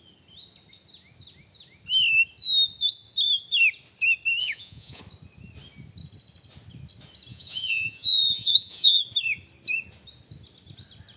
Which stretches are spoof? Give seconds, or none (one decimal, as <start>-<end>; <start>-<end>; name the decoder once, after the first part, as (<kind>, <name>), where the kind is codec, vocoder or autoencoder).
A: 4.4-5.0 (vocoder, Vocos); 7.3-9.0